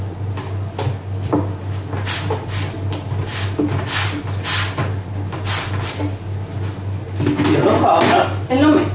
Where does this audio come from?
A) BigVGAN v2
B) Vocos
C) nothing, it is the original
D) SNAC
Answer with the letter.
C